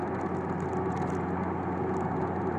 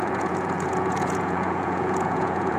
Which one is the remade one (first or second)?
second